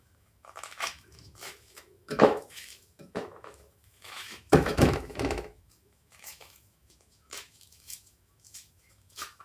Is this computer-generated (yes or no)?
yes